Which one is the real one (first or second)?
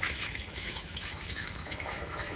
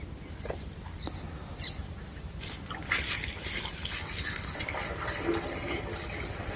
second